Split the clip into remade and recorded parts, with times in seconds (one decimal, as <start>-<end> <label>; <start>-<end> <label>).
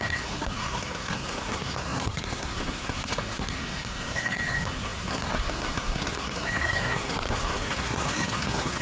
0.0-8.8 remade